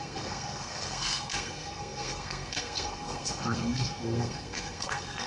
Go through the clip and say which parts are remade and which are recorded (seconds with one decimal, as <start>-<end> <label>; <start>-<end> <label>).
0.0-5.3 remade